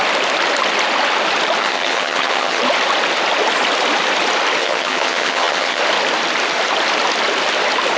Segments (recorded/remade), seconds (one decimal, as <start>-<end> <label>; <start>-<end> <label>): 0.0-1.6 recorded; 1.6-2.6 remade; 2.6-4.6 recorded; 4.6-5.8 remade; 5.8-8.0 recorded